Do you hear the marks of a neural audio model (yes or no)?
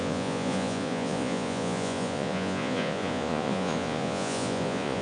yes